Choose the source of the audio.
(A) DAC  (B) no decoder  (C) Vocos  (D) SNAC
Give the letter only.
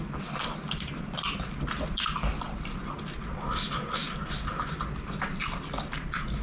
B